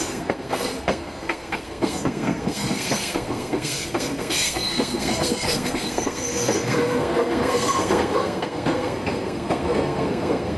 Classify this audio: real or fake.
fake